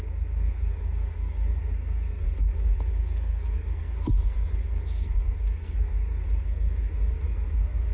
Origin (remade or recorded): remade